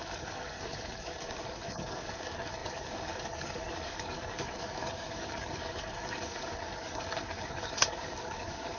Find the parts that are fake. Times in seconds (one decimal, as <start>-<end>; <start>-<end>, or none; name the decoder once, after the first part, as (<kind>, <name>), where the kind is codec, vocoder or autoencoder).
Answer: 0.0-8.8 (codec, DAC)